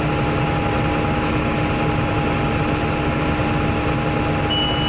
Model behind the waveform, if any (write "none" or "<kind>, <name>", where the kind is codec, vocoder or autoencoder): none